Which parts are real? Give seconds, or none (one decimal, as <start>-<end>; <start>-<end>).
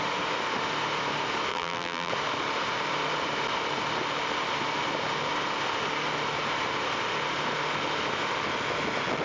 0.0-1.5; 2.1-9.2